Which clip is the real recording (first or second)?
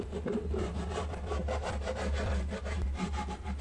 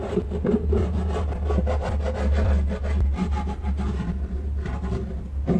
second